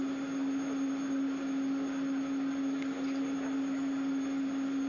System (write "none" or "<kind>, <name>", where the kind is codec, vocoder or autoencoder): none